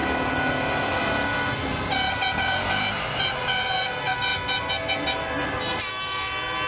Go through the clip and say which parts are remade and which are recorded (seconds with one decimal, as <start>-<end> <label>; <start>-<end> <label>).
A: 0.0-6.7 recorded